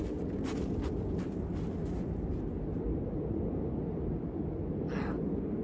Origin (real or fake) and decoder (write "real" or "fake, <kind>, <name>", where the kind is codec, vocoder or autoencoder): real